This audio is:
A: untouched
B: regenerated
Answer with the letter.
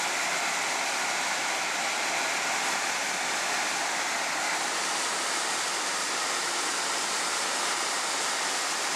B